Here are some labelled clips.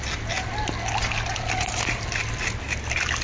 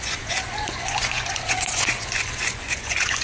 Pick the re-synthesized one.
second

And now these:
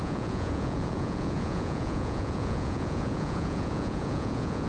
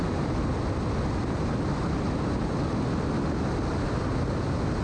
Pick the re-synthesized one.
first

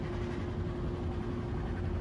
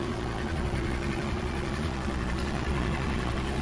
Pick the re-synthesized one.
second